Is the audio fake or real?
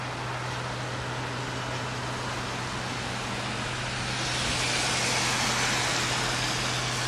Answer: real